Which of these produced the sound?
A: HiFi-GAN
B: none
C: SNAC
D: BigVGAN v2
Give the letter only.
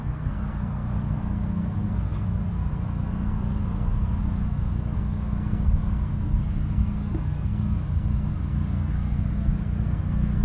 C